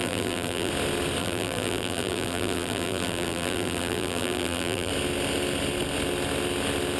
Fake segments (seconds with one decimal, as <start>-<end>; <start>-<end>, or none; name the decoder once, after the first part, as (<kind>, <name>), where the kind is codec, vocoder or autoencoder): 0.0-0.7 (vocoder, BigVGAN v2); 1.2-4.9